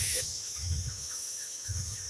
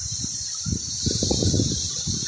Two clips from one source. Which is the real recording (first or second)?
second